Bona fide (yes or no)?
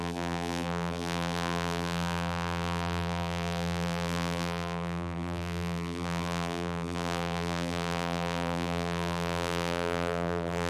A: no